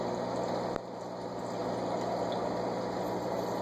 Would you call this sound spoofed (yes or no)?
no